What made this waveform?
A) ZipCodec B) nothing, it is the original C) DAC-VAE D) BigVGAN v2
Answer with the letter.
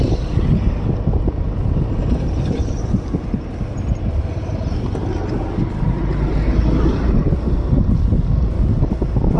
B